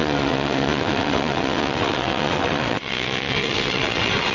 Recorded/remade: remade